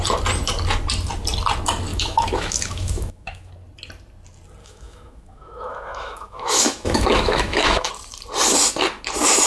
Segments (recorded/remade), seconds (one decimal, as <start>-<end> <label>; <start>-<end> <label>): 0.0-1.9 recorded; 1.9-3.5 remade; 3.5-4.6 recorded; 4.6-7.9 remade; 7.9-9.5 recorded